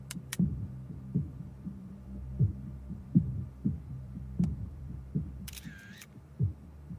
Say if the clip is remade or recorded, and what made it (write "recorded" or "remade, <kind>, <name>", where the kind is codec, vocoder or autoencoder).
remade, vocoder, BigVGAN v2